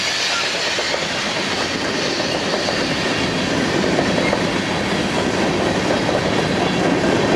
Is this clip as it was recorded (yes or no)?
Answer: yes